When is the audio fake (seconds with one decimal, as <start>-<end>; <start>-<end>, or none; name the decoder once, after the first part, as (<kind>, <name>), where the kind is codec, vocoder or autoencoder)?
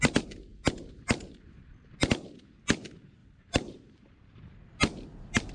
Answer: 3.2-4.4 (vocoder, BigVGAN v2)